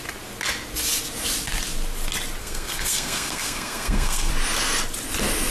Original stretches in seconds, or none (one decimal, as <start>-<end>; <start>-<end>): 0.0-2.4; 4.3-5.5